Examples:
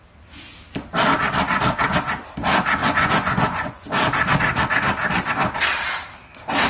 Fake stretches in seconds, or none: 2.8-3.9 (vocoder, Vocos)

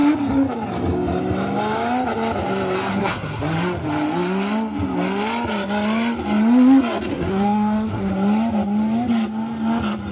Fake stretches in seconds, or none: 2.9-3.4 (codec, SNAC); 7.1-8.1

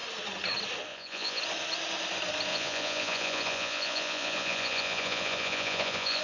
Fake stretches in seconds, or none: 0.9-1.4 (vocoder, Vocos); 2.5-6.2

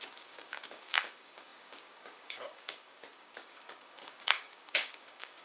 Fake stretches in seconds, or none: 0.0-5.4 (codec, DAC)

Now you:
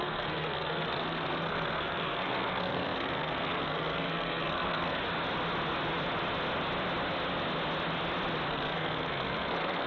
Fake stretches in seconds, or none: 0.0-5.0 (codec, SNAC); 8.5-9.9